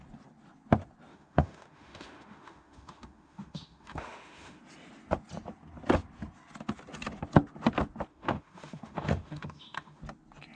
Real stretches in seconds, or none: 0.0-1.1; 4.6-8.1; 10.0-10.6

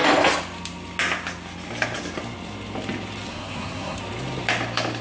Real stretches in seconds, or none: 0.0-3.3; 4.0-5.0

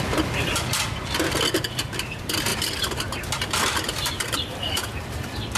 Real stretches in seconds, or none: none